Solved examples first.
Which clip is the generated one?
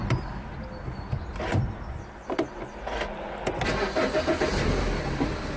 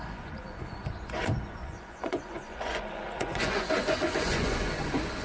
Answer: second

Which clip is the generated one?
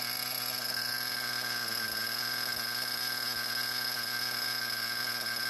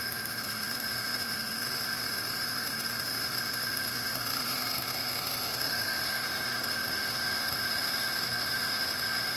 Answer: second